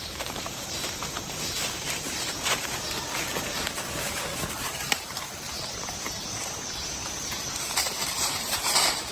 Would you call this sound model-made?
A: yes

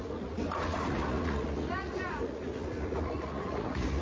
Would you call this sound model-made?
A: yes